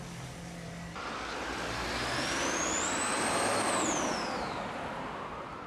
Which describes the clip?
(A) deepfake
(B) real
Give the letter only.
B